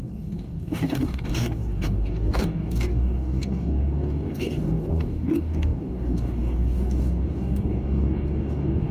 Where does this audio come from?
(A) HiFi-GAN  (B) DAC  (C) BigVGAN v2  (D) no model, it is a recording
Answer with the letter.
B